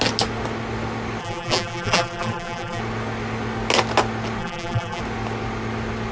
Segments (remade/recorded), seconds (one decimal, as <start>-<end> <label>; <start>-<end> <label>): 0.0-1.2 recorded; 1.2-2.8 remade; 2.8-4.4 recorded; 4.4-5.0 remade; 5.0-6.1 recorded